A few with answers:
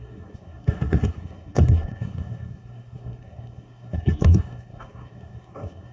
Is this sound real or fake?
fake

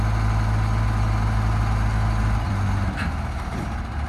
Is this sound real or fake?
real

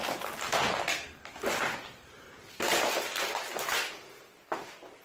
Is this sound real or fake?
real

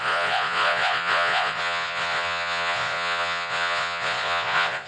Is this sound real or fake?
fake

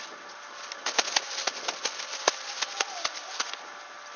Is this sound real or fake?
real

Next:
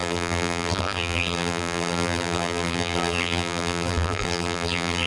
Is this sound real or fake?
fake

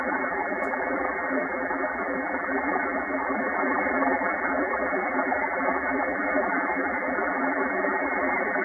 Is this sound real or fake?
fake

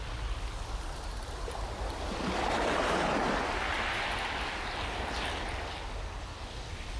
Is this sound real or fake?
real